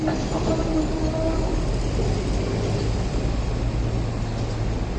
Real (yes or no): yes